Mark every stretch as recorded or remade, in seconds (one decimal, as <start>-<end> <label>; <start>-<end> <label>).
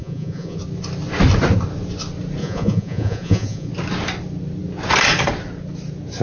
0.0-0.6 remade; 0.6-2.4 recorded; 2.4-3.7 remade; 3.7-6.2 recorded